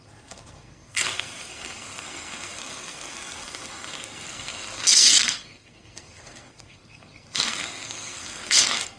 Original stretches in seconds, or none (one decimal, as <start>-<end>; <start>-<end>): none